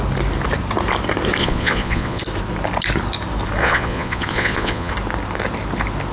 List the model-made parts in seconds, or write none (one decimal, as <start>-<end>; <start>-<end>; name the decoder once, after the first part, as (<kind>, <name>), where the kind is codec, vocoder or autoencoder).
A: 1.4-2.2 (vocoder, Vocos); 3.6-4.9